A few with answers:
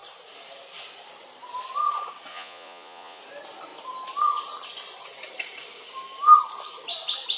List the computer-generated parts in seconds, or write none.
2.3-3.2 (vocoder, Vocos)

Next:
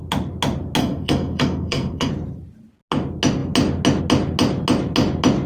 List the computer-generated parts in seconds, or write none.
0.8-2.1 (codec, SNAC)